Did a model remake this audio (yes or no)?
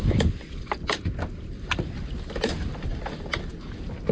no